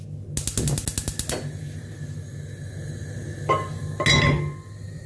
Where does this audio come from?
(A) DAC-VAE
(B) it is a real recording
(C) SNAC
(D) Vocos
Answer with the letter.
B